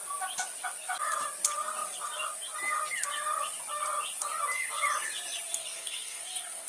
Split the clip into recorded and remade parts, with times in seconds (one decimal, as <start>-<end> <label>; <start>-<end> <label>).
0.0-5.6 recorded; 5.6-6.7 remade